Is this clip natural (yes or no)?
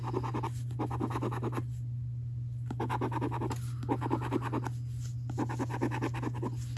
yes